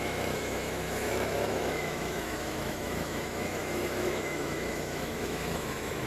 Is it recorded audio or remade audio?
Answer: remade